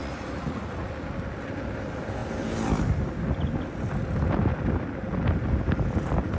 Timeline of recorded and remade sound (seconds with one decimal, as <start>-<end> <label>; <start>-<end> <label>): 0.0-0.9 remade; 0.9-6.4 recorded

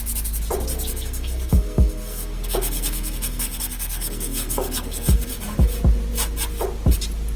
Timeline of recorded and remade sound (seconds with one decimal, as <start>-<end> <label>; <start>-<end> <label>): 0.0-0.9 recorded; 0.9-5.3 remade; 5.3-7.4 recorded

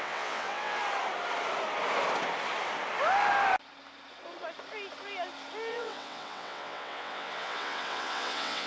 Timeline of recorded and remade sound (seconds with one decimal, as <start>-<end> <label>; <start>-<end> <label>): 0.0-0.8 remade; 0.8-5.7 recorded; 5.7-8.7 remade

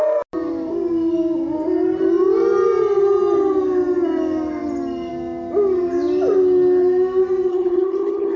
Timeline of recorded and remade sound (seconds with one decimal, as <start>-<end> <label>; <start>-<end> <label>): 0.0-7.5 recorded; 7.5-8.4 remade

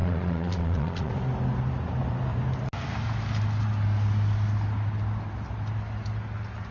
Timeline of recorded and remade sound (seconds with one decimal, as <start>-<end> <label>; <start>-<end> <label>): 0.0-1.1 remade; 1.1-6.7 recorded